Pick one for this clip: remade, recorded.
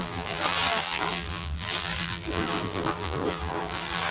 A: remade